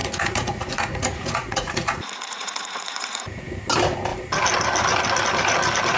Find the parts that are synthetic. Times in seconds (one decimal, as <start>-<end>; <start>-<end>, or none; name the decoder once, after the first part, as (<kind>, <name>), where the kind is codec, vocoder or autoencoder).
0.0-3.6 (vocoder, Vocos)